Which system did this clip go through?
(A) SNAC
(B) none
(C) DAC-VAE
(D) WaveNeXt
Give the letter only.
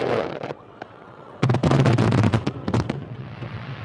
D